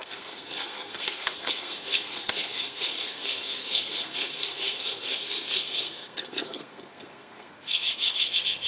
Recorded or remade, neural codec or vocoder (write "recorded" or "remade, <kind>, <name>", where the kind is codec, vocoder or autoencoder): remade, codec, SNAC